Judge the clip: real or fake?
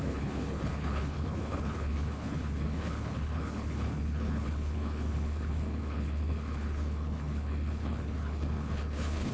fake